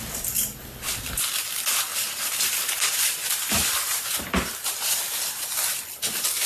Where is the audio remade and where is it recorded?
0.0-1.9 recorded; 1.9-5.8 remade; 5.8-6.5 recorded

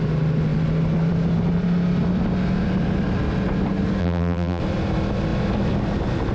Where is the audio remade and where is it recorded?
0.0-4.0 recorded; 4.0-4.6 remade; 4.6-6.3 recorded

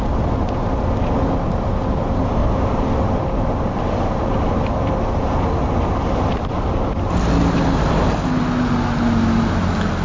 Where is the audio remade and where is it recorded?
0.0-2.4 recorded; 2.4-4.6 remade; 4.6-10.0 recorded